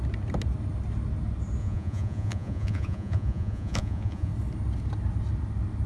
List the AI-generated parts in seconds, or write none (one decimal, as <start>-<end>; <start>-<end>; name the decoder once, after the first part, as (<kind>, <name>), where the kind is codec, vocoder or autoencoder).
1.6-4.3 (vocoder, Vocos)